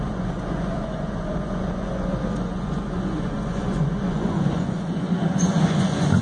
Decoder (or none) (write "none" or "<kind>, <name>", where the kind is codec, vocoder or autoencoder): vocoder, Vocos